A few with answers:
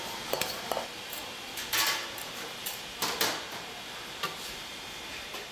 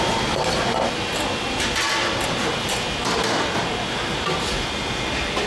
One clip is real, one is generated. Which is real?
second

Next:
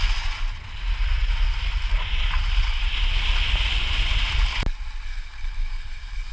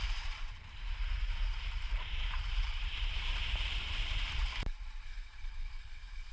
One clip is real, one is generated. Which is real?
first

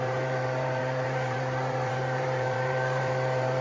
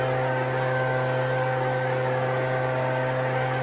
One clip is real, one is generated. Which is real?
second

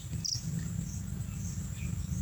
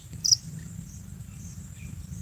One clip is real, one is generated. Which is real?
first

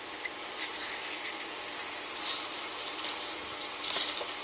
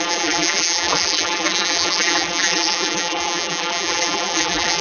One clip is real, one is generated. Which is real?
first